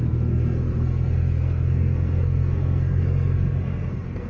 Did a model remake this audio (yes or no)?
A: yes